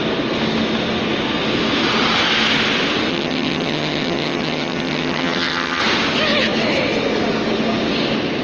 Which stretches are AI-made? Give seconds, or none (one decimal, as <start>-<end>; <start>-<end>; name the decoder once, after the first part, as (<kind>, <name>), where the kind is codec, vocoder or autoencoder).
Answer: 3.1-5.8 (vocoder, HiFi-GAN)